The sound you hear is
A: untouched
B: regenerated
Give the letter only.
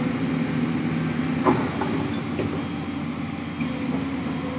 A